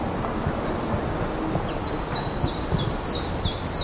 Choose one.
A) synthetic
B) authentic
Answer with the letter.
B